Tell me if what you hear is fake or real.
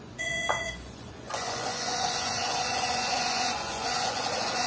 fake